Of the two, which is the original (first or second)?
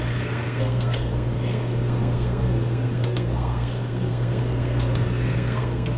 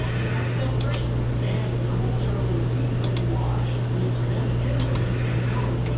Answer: second